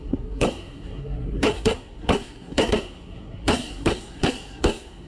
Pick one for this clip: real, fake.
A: fake